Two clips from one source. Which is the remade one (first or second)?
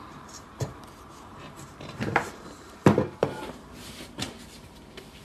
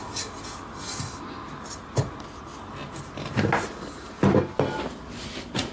first